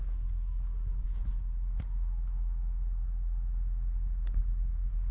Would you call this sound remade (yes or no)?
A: no